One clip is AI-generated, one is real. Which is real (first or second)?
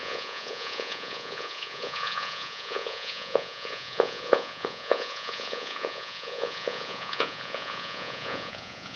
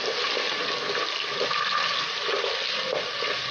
second